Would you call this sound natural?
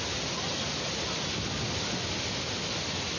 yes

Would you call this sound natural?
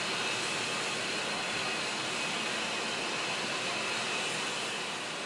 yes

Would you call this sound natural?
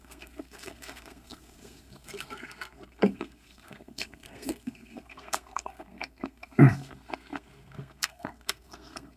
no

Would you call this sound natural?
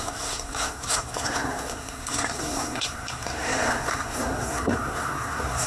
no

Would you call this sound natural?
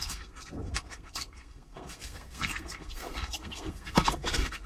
no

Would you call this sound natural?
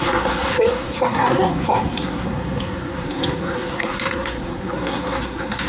no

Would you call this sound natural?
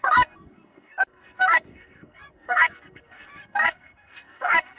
no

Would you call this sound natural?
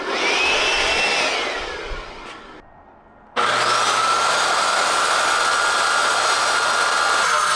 yes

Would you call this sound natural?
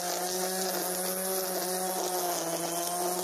yes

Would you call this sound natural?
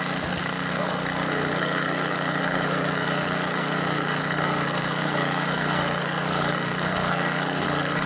no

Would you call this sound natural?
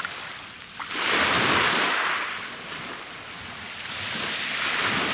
yes